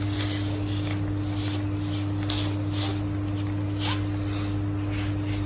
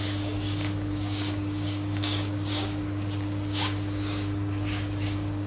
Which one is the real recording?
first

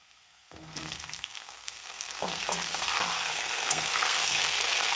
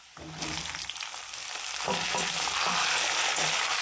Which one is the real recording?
second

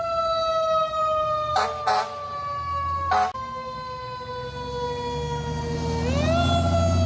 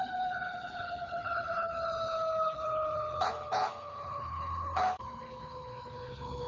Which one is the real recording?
first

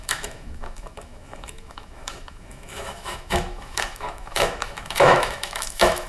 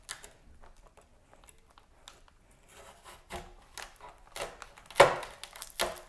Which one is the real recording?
second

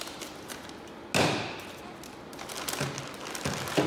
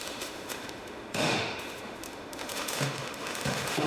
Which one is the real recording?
first